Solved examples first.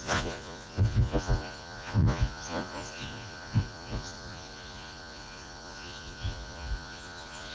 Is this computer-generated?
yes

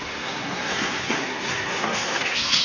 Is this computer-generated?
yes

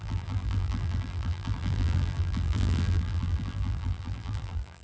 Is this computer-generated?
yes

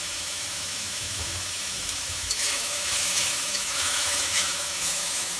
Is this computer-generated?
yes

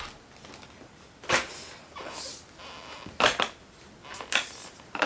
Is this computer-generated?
no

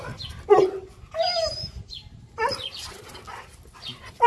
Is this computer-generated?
no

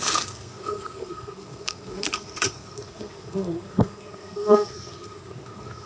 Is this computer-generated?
yes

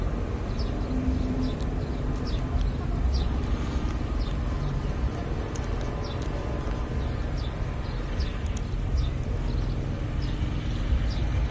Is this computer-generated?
no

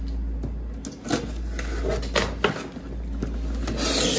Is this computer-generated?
no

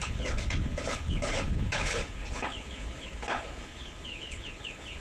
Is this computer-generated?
yes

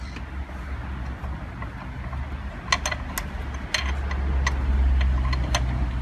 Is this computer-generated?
no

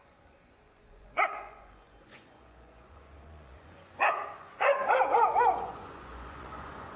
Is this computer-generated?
yes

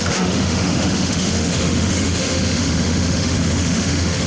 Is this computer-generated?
yes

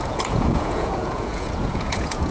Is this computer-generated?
yes